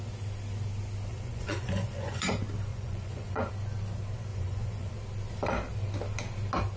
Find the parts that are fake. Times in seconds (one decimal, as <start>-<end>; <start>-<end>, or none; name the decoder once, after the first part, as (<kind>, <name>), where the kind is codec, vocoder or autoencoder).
1.1-2.3 (vocoder, Vocos); 2.7-3.5; 4.3-4.9